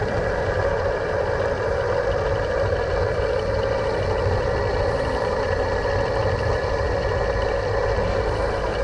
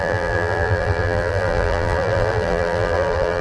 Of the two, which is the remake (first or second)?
second